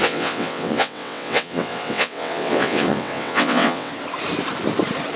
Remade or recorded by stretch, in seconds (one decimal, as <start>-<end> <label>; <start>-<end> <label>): 0.0-3.9 remade; 3.9-5.2 recorded

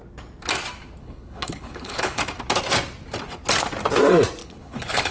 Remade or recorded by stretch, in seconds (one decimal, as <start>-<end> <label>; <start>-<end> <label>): 0.0-1.0 recorded; 1.0-2.2 remade; 2.2-4.4 recorded; 4.4-5.1 remade

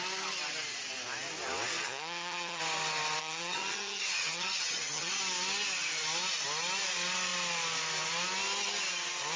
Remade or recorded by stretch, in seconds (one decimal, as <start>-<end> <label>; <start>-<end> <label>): 0.0-1.8 recorded; 1.8-2.6 remade; 2.6-3.2 recorded; 3.2-5.2 remade; 5.2-9.4 recorded

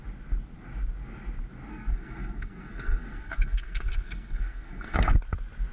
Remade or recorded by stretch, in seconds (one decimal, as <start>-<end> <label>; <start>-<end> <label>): 0.0-1.7 recorded; 1.7-5.1 remade; 5.1-5.7 recorded

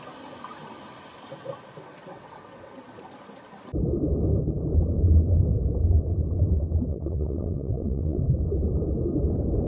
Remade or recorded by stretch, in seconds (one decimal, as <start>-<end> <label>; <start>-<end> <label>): 0.0-2.1 recorded; 2.1-2.7 remade; 2.7-6.9 recorded; 6.9-8.2 remade; 8.2-9.7 recorded

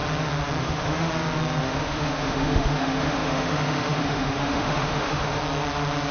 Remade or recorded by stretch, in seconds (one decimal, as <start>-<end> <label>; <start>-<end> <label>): 0.0-0.6 recorded; 0.6-1.1 remade; 1.1-1.6 recorded; 1.6-5.4 remade; 5.4-6.1 recorded

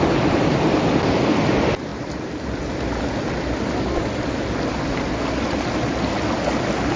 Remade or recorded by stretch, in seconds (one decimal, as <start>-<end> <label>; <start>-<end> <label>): 0.0-7.0 recorded